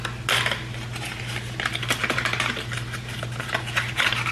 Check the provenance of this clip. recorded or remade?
recorded